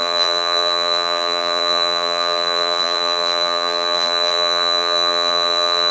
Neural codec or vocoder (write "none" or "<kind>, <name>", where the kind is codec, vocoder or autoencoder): vocoder, BigVGAN v2